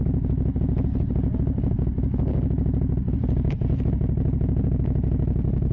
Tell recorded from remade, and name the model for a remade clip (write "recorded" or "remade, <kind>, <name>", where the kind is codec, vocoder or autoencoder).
recorded